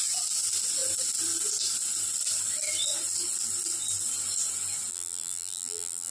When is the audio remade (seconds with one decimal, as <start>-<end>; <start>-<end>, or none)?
4.9-6.1